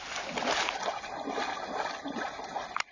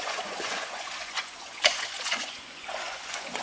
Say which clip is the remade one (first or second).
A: second